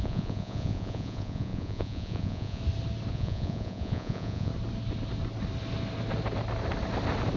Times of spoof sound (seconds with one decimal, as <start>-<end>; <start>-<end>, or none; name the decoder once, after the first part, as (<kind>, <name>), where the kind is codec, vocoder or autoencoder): 0.0-2.6 (vocoder, Vocos); 3.1-4.5